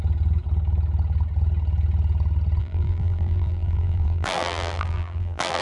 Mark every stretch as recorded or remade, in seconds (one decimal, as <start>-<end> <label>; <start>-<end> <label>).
0.0-2.6 recorded; 2.6-5.6 remade